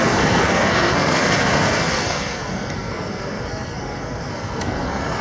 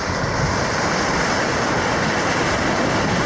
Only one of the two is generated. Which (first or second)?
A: first